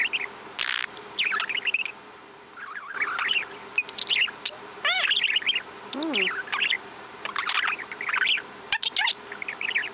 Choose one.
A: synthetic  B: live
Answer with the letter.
B